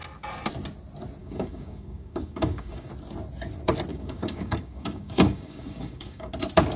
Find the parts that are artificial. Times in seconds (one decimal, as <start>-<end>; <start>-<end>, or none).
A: 1.2-2.9; 3.9-6.3